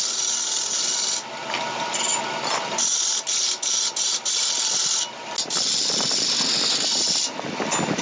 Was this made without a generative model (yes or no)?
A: yes